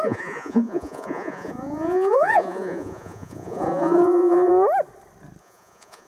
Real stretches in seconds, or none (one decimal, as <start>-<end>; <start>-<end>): 4.5-5.4